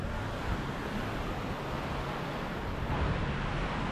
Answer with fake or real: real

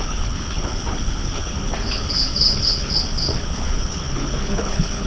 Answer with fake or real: fake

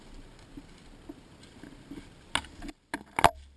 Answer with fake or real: real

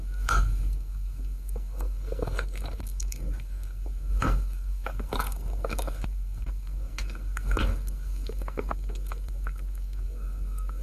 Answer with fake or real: fake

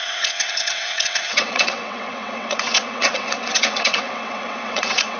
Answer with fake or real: fake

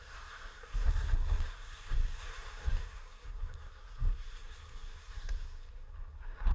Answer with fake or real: fake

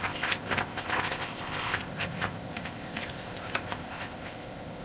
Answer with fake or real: fake